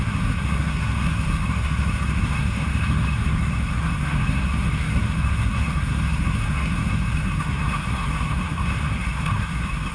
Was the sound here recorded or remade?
remade